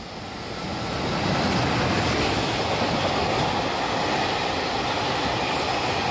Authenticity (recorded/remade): recorded